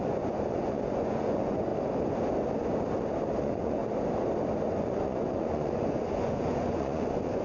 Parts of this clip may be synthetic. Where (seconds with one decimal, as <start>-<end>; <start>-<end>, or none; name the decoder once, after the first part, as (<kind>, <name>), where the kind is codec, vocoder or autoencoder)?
0.0-1.7 (vocoder, Vocos); 3.4-3.8; 4.8-7.4